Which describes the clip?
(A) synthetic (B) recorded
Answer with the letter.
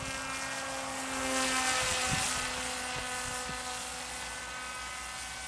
B